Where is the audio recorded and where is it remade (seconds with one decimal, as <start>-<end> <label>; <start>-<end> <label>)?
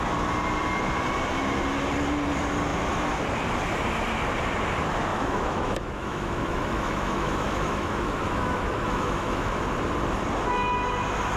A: 0.0-5.1 recorded; 5.1-9.6 remade; 9.6-11.4 recorded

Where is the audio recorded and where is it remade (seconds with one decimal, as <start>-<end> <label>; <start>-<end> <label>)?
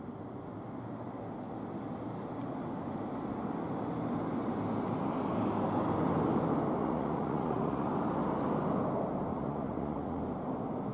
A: 0.0-6.8 recorded; 6.8-7.9 remade; 7.9-9.3 recorded; 9.3-10.2 remade; 10.2-10.9 recorded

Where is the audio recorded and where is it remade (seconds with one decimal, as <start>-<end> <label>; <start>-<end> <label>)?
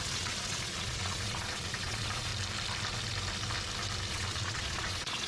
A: 0.0-2.3 remade; 2.3-4.1 recorded; 4.1-5.3 remade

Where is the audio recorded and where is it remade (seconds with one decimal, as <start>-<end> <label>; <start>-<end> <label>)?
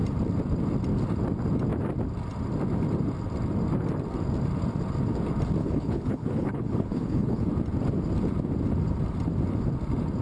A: 0.0-5.6 recorded; 5.6-7.5 remade; 7.5-10.2 recorded